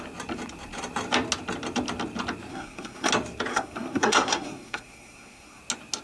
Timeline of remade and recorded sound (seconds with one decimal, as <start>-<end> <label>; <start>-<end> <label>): 0.0-2.5 recorded; 2.5-3.1 remade; 3.1-3.5 recorded; 3.5-5.6 remade; 5.6-6.0 recorded